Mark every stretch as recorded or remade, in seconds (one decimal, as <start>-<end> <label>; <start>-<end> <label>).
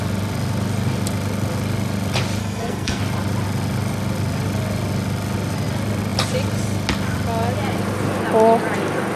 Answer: 0.0-2.4 recorded; 2.4-3.0 remade; 3.0-9.2 recorded